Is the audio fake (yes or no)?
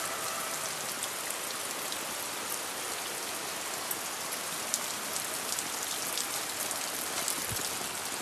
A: no